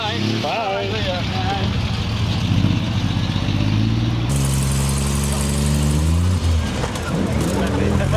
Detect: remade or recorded recorded